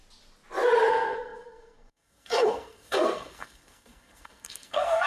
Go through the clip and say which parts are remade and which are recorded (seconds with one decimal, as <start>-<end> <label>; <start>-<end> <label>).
0.0-0.9 recorded; 0.9-5.1 remade